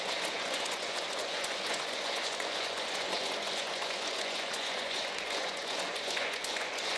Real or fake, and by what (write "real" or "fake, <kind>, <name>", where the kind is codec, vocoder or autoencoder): fake, vocoder, Vocos